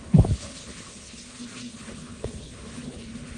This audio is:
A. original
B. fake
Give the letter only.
B